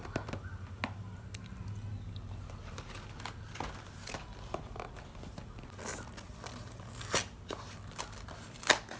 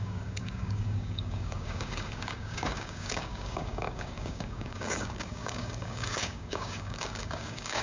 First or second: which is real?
first